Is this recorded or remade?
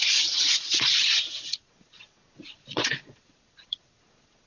remade